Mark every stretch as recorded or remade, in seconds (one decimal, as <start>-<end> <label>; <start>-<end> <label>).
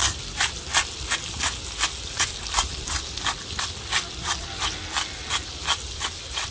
0.0-6.5 recorded